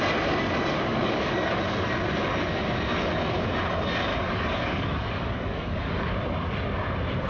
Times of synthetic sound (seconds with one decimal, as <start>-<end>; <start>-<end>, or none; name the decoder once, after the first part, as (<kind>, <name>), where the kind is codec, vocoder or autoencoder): 0.9-1.5 (codec, DAC); 4.1-6.1